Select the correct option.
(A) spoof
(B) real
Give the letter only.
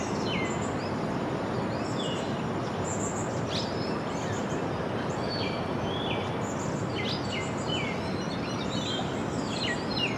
B